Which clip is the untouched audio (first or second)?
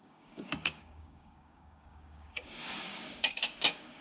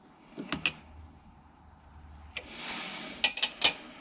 second